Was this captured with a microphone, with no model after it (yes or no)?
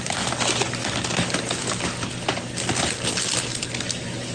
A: yes